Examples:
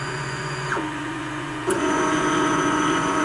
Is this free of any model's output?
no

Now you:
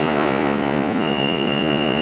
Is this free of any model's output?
no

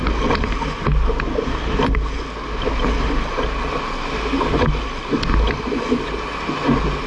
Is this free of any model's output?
yes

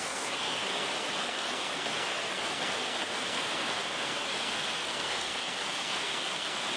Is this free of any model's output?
no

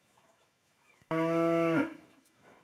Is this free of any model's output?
no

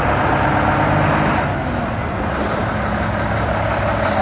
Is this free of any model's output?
yes